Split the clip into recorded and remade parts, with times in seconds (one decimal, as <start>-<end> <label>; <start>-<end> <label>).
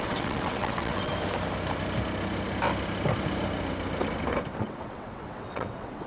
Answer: 0.0-1.1 remade; 1.1-4.6 recorded; 4.6-6.1 remade